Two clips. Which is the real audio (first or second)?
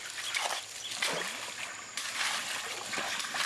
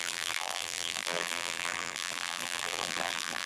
first